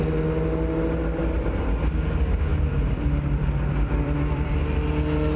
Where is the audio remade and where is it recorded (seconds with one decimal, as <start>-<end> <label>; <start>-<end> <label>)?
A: 0.0-2.5 recorded; 2.5-4.6 remade; 4.6-5.4 recorded